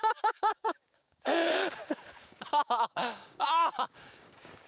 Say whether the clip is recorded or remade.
remade